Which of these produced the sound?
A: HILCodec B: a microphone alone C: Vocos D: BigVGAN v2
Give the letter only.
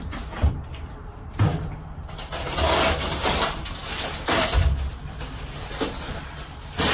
B